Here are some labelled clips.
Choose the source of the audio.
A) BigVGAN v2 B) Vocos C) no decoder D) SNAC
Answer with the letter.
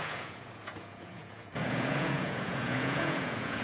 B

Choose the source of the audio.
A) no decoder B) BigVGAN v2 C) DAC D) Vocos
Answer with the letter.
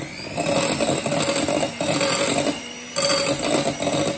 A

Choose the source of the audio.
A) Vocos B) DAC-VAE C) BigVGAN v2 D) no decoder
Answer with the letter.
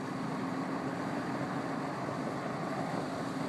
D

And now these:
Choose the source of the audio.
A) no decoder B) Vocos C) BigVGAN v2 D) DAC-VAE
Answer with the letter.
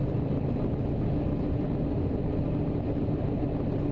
A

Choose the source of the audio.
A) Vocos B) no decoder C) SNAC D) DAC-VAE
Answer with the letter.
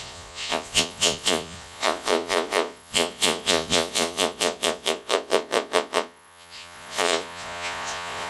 A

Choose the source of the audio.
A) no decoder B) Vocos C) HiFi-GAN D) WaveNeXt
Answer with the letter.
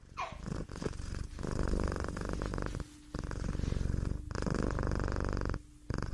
A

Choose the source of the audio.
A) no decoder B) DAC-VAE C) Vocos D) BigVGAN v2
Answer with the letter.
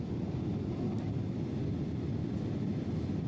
A